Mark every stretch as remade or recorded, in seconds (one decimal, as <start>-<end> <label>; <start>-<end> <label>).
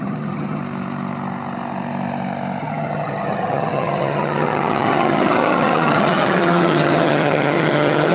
0.0-0.6 remade; 0.6-2.6 recorded; 2.6-8.1 remade